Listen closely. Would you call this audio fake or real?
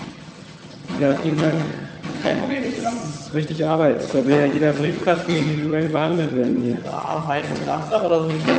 fake